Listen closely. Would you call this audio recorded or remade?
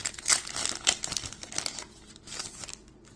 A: recorded